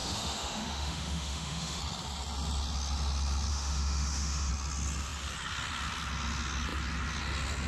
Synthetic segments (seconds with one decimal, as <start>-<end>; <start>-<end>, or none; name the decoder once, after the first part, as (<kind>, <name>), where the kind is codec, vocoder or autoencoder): 0.0-1.8 (autoencoder, DAC-VAE); 3.5-4.5